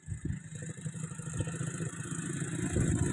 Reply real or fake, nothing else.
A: real